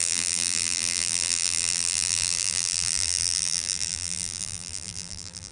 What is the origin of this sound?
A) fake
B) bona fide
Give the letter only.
A